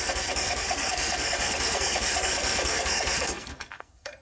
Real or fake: fake